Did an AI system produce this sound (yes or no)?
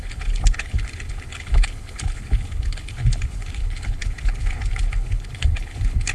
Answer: yes